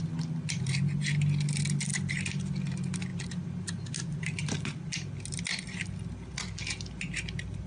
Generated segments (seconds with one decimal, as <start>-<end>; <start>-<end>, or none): none